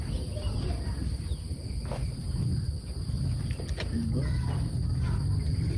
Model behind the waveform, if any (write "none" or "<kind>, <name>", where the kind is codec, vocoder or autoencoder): none